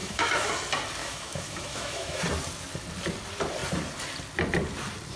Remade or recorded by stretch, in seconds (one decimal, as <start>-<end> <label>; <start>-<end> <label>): 0.0-0.5 remade; 0.5-1.0 recorded; 1.0-2.2 remade; 2.2-5.2 recorded